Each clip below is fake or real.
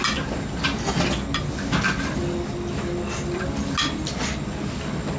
real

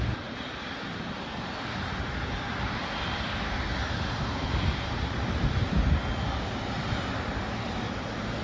real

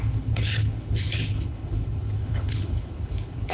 fake